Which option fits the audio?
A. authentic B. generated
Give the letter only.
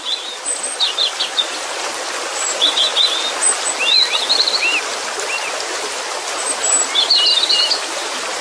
A